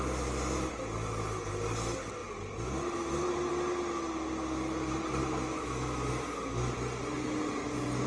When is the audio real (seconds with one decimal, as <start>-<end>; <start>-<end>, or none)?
0.0-5.2; 6.1-8.1